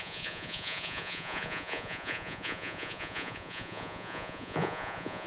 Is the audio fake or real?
fake